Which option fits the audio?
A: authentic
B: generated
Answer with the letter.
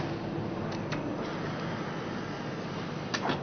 A